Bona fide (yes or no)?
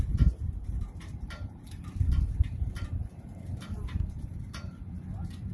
no